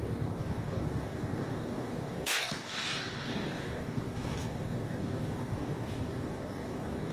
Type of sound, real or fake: fake